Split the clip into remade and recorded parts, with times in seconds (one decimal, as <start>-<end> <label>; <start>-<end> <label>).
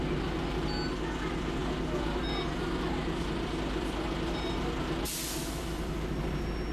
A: 0.0-6.7 recorded